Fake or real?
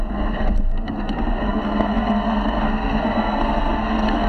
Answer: fake